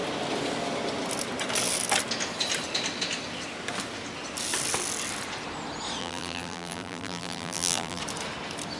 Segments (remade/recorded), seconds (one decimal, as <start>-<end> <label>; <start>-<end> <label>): 0.0-6.0 recorded; 6.0-8.0 remade; 8.0-8.8 recorded